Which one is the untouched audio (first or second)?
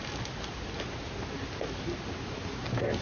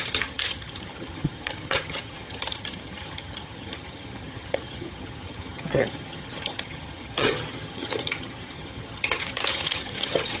first